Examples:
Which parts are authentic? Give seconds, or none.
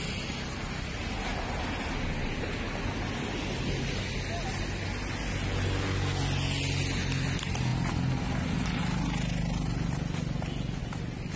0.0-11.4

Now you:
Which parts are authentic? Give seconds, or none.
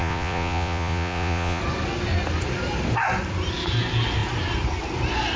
1.6-5.4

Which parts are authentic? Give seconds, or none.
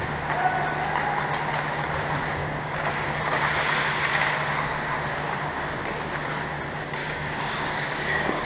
0.0-2.4; 3.2-7.0